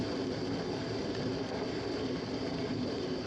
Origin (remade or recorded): recorded